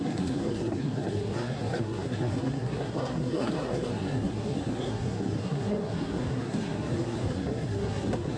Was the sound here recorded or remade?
remade